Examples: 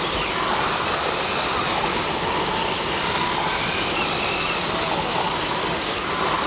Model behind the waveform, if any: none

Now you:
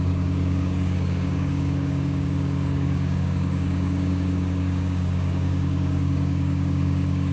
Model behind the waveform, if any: codec, DAC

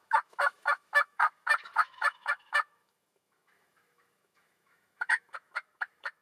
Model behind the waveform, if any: autoencoder, DAC-VAE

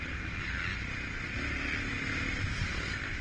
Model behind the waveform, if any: none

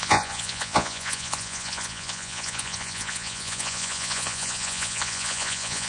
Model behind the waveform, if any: vocoder, Vocos